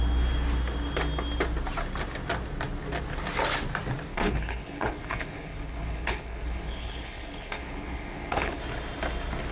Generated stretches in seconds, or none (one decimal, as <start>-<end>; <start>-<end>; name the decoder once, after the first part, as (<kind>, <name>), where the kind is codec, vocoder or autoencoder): 4.1-8.6 (codec, HILCodec)